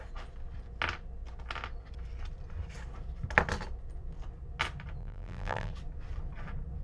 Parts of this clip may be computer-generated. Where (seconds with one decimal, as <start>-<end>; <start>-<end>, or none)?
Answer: 5.0-5.7

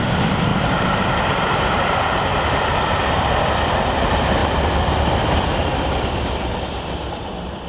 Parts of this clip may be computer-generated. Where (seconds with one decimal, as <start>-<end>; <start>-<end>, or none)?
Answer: 0.5-2.4

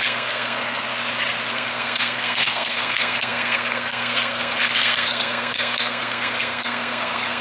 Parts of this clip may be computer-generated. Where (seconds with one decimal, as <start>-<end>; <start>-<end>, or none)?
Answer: 0.0-0.9; 1.5-7.4

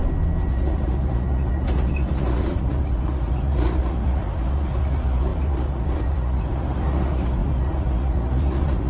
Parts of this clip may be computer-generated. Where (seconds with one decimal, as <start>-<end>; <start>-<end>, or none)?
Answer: 0.5-8.9